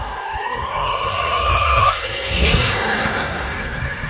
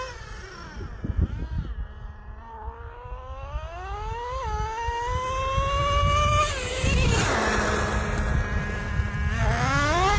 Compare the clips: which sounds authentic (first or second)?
second